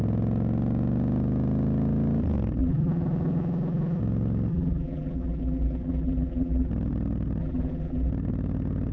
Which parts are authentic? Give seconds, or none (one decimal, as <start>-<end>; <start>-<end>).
0.0-2.6; 4.0-4.5; 6.7-7.4; 8.1-8.9